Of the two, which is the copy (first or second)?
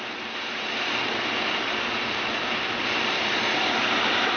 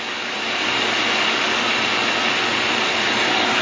first